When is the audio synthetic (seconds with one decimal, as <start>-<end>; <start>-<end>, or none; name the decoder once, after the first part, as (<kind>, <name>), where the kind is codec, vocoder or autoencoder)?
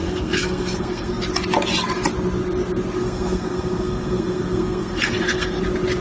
0.0-1.2 (codec, SNAC); 3.0-5.6